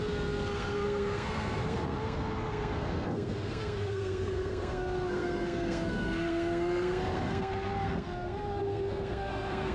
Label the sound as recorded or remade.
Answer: remade